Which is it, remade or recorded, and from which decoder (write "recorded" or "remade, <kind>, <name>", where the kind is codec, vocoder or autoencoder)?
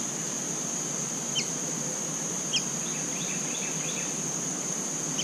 recorded